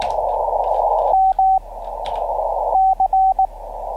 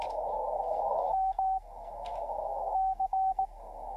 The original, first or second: first